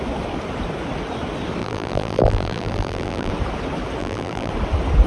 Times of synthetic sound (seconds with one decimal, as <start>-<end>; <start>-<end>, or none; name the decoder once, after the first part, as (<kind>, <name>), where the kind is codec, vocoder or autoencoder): 1.6-3.3 (vocoder, BigVGAN v2); 4.0-4.5